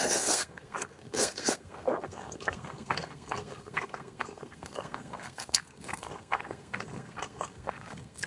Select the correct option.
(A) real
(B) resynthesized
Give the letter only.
B